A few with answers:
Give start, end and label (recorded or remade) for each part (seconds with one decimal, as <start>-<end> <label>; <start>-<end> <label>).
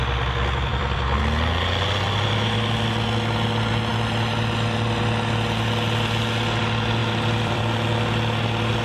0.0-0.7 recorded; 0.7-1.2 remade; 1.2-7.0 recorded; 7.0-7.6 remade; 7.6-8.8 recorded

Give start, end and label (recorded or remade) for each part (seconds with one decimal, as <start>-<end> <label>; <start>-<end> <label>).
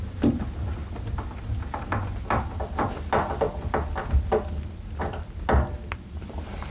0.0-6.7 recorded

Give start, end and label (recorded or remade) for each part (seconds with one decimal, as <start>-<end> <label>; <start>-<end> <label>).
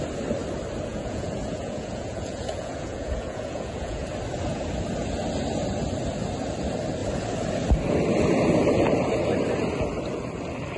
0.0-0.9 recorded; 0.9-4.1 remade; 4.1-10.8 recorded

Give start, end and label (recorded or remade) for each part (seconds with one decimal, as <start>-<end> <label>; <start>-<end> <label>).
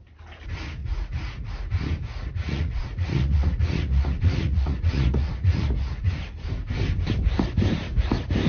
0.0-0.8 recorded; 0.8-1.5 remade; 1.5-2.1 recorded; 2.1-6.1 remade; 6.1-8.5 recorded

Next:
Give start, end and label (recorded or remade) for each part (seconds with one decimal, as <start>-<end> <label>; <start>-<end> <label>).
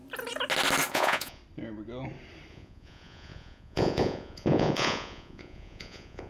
0.0-0.9 recorded; 0.9-1.4 remade; 1.4-2.5 recorded; 2.5-6.3 remade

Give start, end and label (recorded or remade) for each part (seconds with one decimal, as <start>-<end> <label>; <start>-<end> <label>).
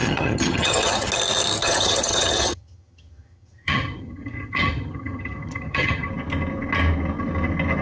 0.0-1.1 remade; 1.1-1.6 recorded; 1.6-6.1 remade; 6.1-7.8 recorded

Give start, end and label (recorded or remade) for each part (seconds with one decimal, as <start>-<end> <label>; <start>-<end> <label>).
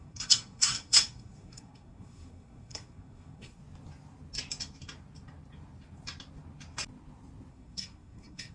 0.0-3.6 remade; 3.6-7.5 recorded; 7.5-8.5 remade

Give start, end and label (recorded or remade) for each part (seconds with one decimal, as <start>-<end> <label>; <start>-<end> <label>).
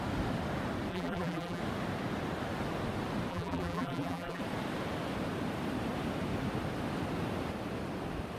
0.0-0.9 recorded; 0.9-1.6 remade; 1.6-3.3 recorded; 3.3-4.4 remade; 4.4-8.4 recorded